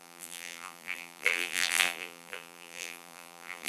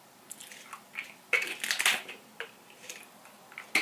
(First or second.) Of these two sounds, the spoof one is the first